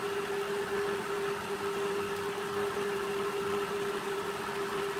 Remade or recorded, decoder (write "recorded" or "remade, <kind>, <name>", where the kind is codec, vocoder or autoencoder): recorded